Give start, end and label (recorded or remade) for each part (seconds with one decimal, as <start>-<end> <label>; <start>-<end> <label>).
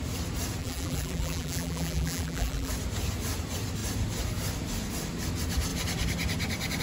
0.0-0.6 recorded; 0.6-2.7 remade; 2.7-6.8 recorded